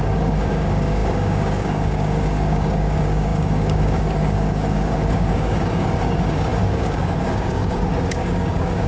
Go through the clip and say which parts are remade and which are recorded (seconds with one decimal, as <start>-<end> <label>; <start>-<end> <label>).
0.0-8.9 remade